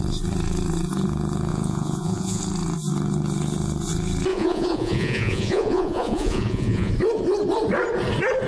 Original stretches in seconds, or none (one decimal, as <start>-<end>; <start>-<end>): 0.0-1.5; 2.4-4.3; 6.9-8.5